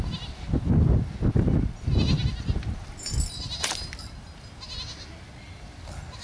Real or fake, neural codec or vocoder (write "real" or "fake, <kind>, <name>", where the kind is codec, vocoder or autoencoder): real